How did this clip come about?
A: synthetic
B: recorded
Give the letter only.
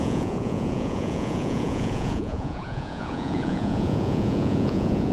A